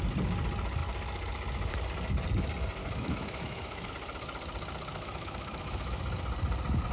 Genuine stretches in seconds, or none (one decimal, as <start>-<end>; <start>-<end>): 0.0-2.8; 3.9-4.9; 6.0-6.9